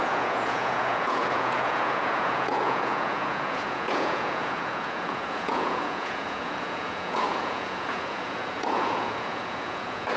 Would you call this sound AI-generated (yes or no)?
yes